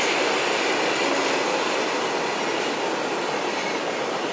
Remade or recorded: recorded